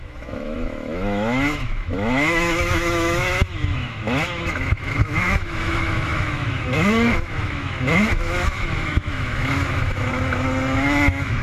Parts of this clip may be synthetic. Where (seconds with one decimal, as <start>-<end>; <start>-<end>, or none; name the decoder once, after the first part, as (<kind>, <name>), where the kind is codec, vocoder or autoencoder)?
0.0-11.4 (autoencoder, DAC-VAE)